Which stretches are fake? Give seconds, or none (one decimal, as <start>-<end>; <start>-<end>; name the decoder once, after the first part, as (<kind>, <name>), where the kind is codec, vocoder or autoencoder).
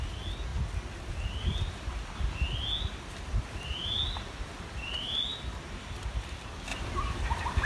6.7-7.7 (vocoder, BigVGAN v2)